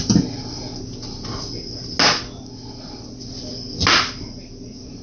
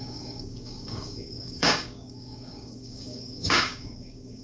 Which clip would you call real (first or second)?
first